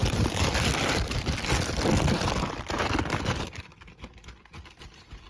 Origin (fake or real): real